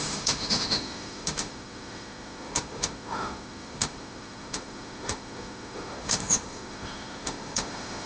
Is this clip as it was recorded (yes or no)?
no